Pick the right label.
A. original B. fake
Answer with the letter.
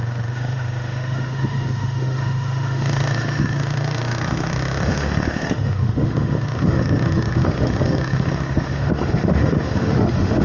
B